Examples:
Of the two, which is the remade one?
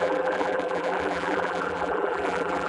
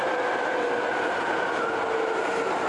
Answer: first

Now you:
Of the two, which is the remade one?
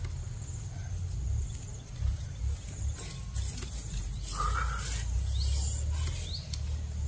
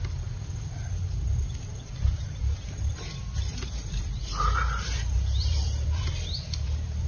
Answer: second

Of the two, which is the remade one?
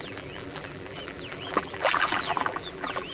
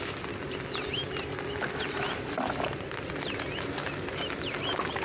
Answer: first